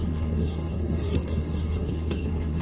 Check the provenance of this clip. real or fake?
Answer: fake